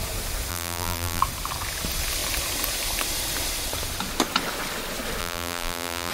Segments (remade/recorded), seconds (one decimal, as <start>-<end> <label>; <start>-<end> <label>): 0.0-0.5 recorded; 0.5-1.2 remade; 1.2-5.2 recorded; 5.2-6.1 remade